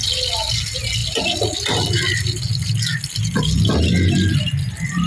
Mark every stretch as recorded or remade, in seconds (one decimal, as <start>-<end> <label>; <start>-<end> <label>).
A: 0.0-5.1 recorded